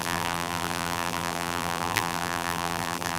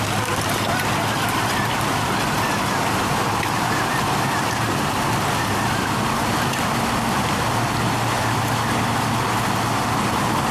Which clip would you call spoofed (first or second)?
first